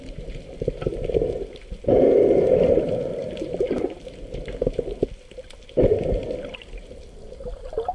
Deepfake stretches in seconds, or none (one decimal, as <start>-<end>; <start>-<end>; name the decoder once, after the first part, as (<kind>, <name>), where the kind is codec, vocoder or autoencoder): none